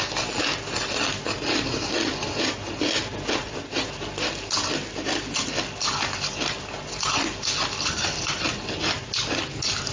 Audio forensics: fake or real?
real